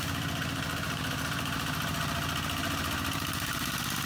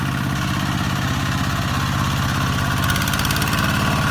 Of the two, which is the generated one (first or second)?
first